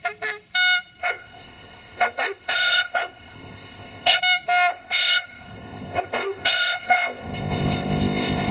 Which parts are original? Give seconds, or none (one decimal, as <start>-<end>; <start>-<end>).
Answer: 0.0-1.0; 4.2-4.7

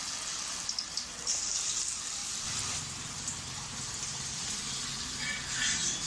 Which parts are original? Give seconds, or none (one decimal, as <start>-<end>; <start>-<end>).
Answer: 0.0-2.2; 3.1-6.1

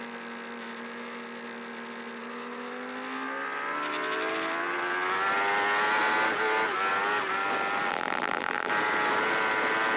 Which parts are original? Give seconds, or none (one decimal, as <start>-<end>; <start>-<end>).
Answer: 0.0-7.9; 8.7-10.0